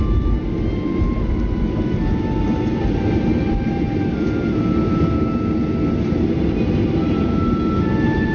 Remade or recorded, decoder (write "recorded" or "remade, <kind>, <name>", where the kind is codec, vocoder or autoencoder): recorded